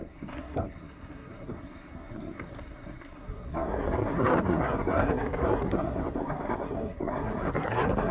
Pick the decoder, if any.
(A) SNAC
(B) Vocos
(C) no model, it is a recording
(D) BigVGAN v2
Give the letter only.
A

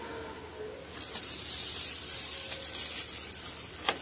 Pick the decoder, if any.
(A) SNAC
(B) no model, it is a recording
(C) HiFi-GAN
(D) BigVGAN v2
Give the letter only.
B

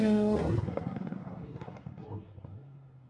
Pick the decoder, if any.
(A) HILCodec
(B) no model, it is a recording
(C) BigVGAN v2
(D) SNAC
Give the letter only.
D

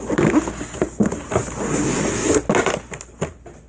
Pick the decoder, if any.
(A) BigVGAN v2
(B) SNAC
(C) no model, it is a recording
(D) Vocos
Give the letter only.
C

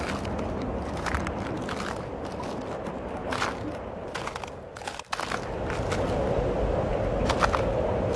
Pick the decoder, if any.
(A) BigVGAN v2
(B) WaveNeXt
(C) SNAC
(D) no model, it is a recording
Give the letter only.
D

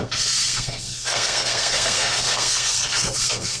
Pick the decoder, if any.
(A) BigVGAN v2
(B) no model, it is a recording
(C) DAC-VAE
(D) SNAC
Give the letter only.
D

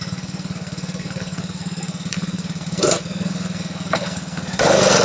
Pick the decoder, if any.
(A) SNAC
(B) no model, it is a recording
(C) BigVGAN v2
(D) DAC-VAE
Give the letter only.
A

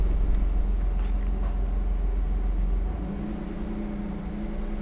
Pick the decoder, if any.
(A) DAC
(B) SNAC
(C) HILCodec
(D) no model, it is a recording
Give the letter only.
D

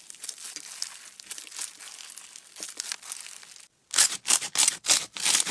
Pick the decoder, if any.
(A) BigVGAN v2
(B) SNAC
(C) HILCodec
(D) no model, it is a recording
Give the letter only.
D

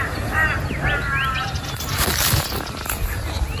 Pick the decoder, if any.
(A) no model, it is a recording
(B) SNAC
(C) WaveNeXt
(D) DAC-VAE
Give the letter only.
A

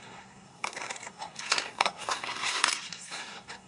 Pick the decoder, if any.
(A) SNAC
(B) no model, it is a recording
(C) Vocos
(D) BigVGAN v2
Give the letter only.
A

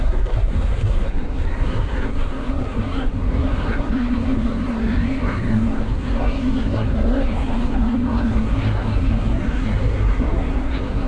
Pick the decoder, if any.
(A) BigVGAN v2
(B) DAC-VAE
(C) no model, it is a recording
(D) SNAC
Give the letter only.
D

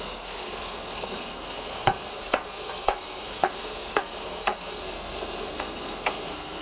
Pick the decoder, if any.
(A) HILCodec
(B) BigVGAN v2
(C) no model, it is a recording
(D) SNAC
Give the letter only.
D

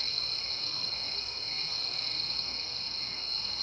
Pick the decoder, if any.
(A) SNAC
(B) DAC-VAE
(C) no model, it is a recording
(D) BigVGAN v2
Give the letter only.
A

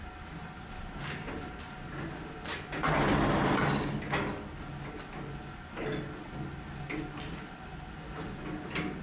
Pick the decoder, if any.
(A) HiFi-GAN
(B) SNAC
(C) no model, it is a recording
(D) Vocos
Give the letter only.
C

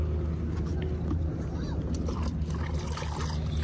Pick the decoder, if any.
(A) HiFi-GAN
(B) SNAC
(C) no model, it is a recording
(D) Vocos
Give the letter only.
C